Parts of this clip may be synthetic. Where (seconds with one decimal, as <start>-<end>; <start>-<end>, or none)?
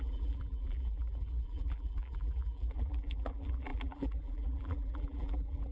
0.0-5.7